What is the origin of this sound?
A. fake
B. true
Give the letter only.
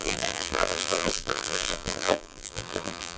A